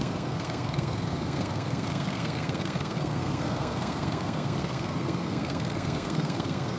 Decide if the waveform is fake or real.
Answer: fake